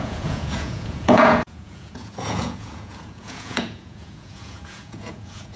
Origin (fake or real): fake